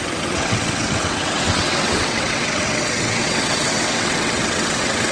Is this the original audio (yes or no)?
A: no